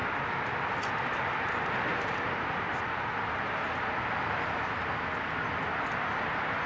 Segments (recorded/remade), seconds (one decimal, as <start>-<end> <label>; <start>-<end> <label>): 0.0-6.7 recorded

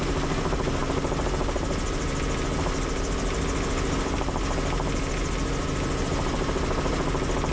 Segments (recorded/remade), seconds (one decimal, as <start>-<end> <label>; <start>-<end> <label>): 0.0-7.5 recorded

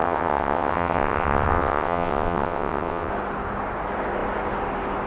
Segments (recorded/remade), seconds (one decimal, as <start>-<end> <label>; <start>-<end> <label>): 0.0-3.1 remade; 3.1-5.1 recorded

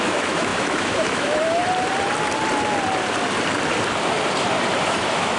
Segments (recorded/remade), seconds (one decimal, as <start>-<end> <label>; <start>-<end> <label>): 0.0-1.6 remade; 1.6-4.8 recorded; 4.8-5.4 remade

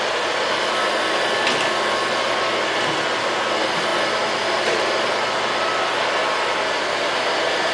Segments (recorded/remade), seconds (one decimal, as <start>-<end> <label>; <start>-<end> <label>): 0.0-7.7 recorded

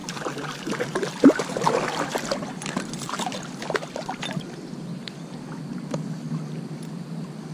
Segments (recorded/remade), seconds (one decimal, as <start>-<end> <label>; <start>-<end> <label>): 0.0-4.5 remade; 4.5-7.5 recorded

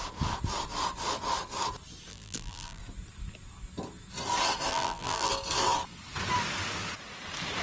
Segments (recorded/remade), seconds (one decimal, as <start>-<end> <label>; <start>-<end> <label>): 0.0-2.1 recorded; 2.1-2.8 remade; 2.8-4.7 recorded; 4.7-5.3 remade; 5.3-7.6 recorded

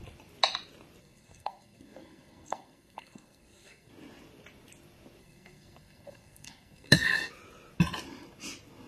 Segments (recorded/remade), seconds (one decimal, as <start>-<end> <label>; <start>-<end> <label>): 0.0-1.0 recorded; 1.0-3.9 remade; 3.9-5.2 recorded; 5.2-7.3 remade; 7.3-8.9 recorded